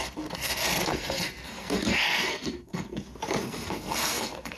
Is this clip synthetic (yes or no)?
yes